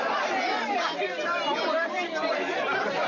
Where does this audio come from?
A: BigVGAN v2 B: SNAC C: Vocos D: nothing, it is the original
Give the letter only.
A